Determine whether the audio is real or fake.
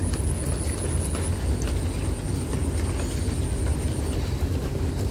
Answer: real